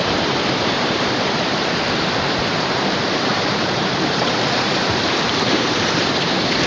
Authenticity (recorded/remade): remade